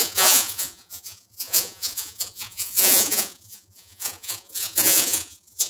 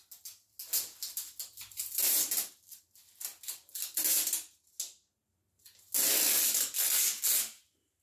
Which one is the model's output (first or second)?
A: first